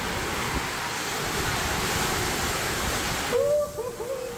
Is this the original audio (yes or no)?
yes